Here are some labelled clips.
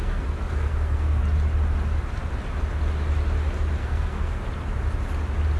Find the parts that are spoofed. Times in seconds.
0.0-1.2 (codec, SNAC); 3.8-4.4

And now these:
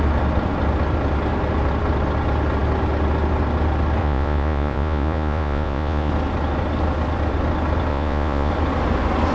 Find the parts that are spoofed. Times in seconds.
4.0-6.1 (vocoder, Vocos); 7.9-8.5

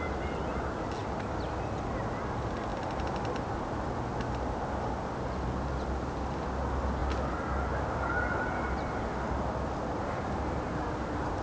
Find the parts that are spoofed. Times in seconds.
none

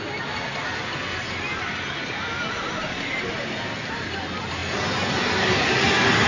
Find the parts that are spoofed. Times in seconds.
none

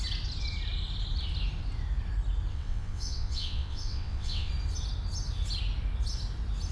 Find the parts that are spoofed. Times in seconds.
2.5-4.5 (vocoder, WaveNeXt)

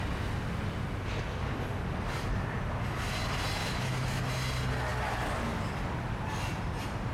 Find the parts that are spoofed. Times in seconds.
3.6-4.2 (autoencoder, DAC-VAE)